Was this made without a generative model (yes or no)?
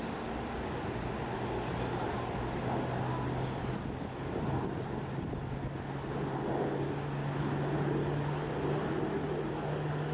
yes